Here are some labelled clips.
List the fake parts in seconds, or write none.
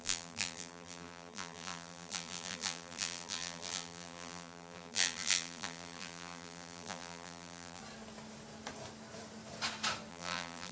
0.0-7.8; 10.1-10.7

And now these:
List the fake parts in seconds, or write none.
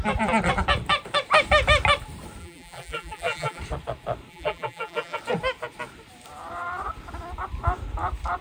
2.4-3.6; 4.3-5.2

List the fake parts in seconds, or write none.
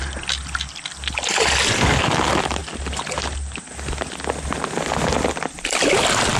none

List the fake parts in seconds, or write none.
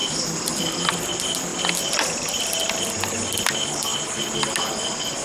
0.0-0.6; 1.5-2.8